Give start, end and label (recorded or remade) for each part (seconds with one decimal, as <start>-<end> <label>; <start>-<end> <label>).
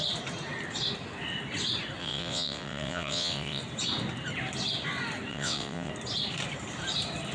0.0-2.0 recorded; 2.0-3.6 remade; 3.6-5.3 recorded; 5.3-5.9 remade; 5.9-7.3 recorded